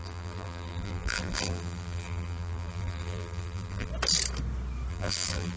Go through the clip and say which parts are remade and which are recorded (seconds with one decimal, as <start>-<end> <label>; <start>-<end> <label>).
0.0-3.9 remade; 3.9-4.9 recorded; 4.9-5.6 remade